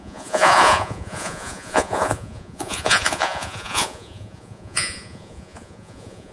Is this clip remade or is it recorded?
remade